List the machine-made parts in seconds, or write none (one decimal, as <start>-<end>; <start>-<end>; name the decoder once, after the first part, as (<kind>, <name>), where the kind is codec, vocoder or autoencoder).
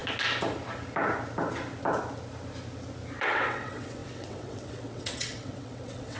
3.2-6.2 (vocoder, WaveNeXt)